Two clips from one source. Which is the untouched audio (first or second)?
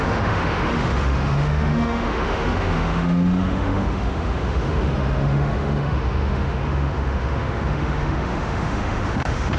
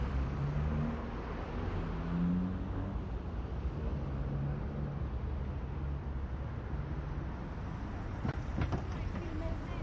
second